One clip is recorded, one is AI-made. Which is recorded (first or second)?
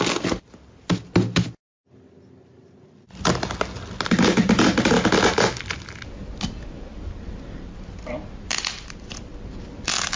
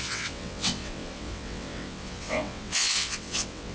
first